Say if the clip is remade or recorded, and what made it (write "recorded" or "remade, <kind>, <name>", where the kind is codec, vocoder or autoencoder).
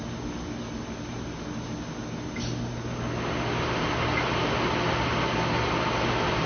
recorded